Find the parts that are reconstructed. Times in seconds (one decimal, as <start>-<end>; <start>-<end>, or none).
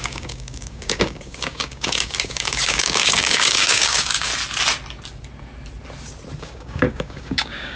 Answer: 0.0-4.3; 6.4-7.8